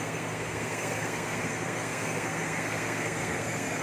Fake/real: fake